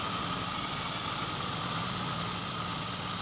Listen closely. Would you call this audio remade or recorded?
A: recorded